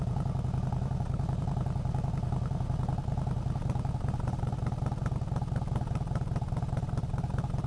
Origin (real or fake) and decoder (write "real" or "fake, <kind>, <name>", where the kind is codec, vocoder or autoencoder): fake, vocoder, BigVGAN v2